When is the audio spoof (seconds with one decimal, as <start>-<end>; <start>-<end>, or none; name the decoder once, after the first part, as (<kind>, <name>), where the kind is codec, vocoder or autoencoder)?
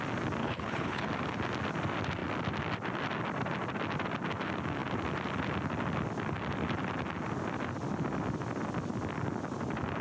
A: 0.4-1.1 (codec, HILCodec)